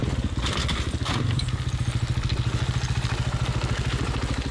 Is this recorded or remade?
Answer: recorded